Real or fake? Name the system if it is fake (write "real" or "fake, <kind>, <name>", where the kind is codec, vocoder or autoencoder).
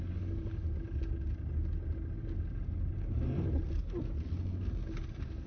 real